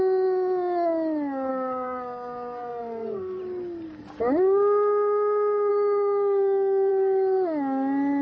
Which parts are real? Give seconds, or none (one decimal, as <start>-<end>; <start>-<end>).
0.0-1.5; 3.4-5.7; 6.9-8.2